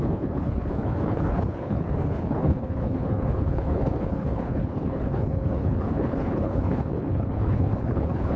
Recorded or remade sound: remade